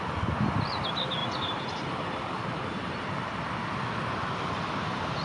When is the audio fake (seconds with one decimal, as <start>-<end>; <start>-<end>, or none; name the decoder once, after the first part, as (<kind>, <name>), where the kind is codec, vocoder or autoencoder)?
none